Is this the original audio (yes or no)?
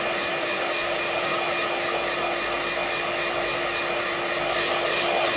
yes